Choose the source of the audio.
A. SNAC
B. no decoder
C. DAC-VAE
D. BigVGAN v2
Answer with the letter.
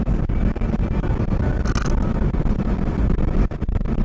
B